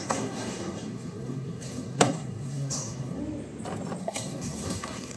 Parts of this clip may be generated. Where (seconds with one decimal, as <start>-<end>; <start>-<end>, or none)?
0.0-3.2; 4.0-5.2